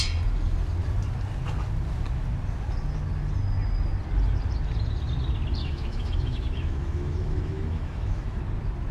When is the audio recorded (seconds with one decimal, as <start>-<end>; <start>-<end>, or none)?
0.0-5.6; 8.4-8.9